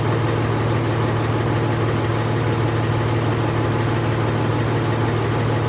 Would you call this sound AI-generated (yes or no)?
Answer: no